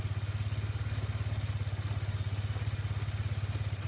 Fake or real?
real